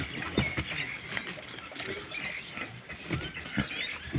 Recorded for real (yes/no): yes